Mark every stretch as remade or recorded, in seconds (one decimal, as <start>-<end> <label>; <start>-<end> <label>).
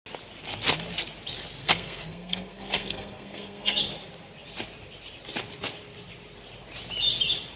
0.0-1.6 recorded; 1.6-3.8 remade; 3.8-7.6 recorded